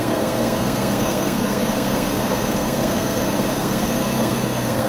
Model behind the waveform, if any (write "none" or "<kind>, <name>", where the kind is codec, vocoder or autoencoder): codec, SNAC